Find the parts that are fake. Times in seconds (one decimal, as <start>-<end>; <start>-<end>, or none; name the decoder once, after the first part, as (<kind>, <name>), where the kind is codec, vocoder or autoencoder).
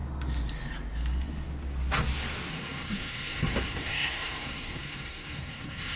2.5-6.0 (codec, SNAC)